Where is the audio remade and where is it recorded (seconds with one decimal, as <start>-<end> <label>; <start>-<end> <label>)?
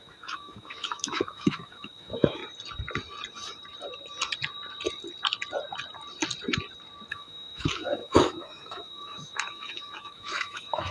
0.0-2.4 remade; 2.4-7.1 recorded; 7.1-10.9 remade